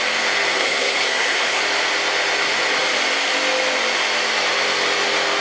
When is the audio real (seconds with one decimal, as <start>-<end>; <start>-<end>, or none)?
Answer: 0.0-0.5; 1.6-5.4